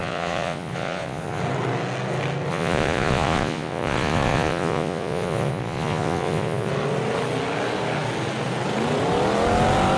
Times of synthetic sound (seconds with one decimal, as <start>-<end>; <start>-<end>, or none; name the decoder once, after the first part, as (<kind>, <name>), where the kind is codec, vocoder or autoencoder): 0.0-1.4 (vocoder, Vocos); 2.5-6.7